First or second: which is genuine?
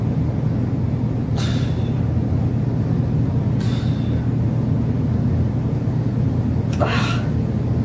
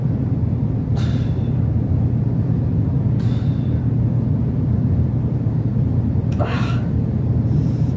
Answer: first